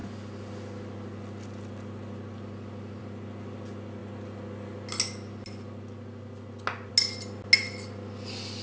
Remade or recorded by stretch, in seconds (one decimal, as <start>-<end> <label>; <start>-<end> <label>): 0.0-8.6 recorded